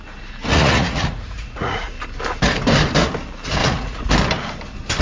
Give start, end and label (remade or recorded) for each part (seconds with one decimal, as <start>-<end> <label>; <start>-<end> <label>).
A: 0.0-0.5 recorded; 0.5-1.9 remade; 1.9-3.6 recorded; 3.6-4.1 remade; 4.1-5.0 recorded